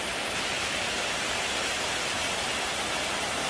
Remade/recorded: recorded